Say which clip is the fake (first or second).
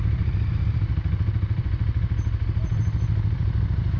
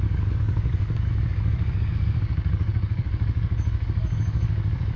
second